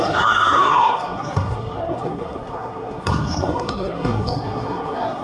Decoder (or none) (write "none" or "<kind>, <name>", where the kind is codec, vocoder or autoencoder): codec, SNAC